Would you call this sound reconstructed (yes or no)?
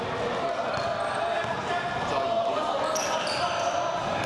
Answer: no